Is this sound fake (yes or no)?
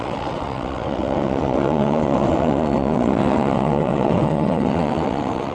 yes